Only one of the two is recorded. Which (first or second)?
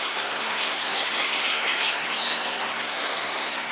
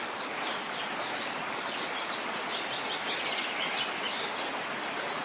second